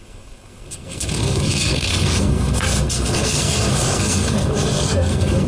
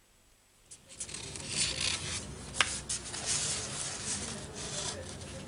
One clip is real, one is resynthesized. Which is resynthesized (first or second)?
first